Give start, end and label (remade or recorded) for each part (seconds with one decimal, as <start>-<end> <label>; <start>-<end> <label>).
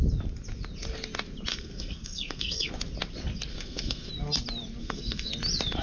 0.0-1.5 recorded; 1.5-2.7 remade; 2.7-3.5 recorded; 3.5-4.1 remade; 4.1-4.8 recorded; 4.8-5.3 remade; 5.3-5.8 recorded